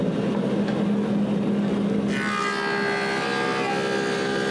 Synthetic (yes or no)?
no